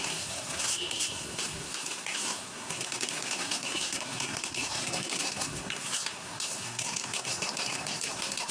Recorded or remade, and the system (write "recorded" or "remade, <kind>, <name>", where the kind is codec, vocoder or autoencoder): remade, codec, SNAC